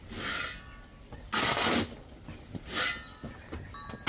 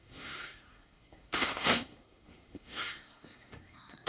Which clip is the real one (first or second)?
first